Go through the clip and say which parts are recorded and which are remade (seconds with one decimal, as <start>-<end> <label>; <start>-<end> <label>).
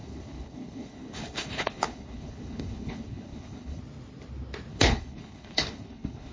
0.0-3.8 remade; 3.8-4.7 recorded; 4.7-6.3 remade